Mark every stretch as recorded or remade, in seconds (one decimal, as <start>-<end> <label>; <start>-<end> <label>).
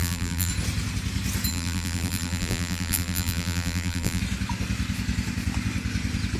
0.0-0.5 remade; 0.5-1.5 recorded; 1.5-4.2 remade; 4.2-6.4 recorded